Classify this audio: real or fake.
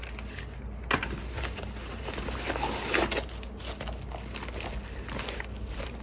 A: real